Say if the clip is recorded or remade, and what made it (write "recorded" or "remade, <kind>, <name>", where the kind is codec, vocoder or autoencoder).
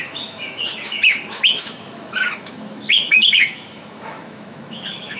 remade, autoencoder, DAC-VAE